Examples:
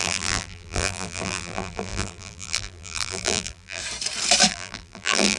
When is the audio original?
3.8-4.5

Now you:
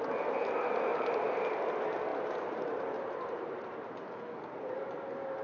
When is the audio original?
0.0-0.9; 1.5-2.1

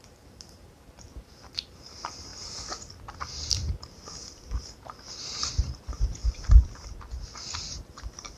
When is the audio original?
2.3-5.8; 6.2-7.7

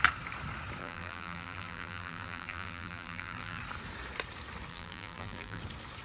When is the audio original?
0.0-0.8; 3.6-4.7; 5.6-6.0

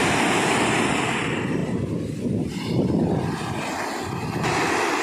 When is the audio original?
0.0-5.0

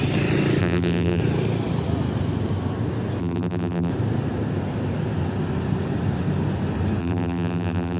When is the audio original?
0.0-0.6; 1.2-3.2; 3.9-7.0

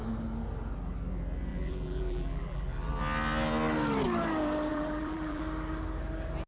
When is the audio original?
0.0-1.5; 3.0-4.7; 5.4-6.5

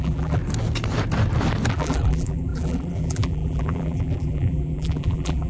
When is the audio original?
0.4-1.7